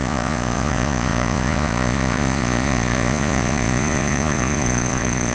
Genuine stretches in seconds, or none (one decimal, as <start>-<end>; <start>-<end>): none